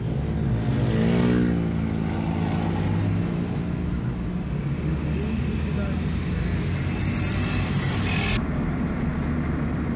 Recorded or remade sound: recorded